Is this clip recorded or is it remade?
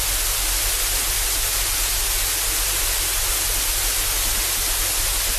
recorded